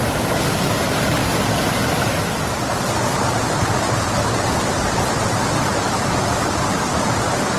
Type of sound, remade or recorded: recorded